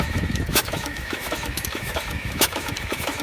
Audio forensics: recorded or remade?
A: remade